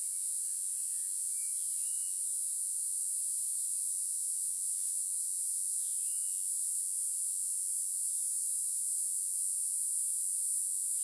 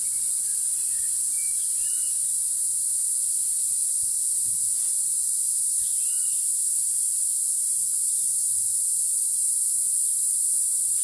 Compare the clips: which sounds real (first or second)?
second